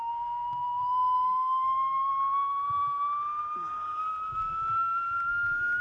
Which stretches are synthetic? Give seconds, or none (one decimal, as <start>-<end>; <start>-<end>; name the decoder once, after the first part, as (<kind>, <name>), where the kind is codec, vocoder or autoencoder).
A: 0.0-2.1 (codec, SNAC)